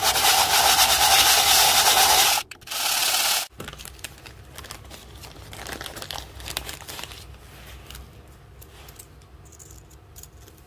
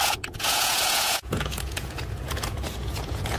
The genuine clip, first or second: first